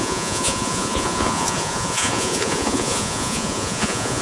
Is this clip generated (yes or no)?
yes